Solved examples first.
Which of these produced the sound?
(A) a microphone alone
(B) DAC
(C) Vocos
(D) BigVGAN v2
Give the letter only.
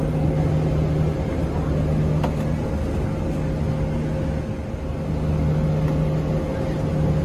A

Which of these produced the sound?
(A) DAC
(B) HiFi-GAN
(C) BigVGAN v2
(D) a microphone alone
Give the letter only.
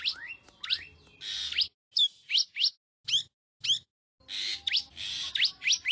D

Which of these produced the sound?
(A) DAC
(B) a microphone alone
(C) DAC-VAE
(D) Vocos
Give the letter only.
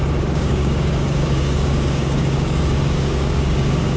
A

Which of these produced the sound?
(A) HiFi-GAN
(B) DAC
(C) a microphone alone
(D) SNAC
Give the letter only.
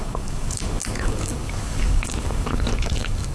B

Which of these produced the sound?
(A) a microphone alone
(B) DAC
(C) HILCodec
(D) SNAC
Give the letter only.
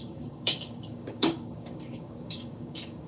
B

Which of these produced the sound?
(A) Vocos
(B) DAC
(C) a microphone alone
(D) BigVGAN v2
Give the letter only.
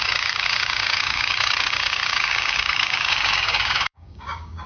B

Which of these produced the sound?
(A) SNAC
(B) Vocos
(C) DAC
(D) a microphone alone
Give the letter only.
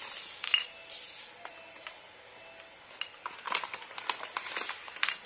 D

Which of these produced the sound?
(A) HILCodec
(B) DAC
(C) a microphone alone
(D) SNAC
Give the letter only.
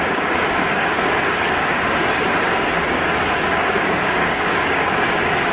B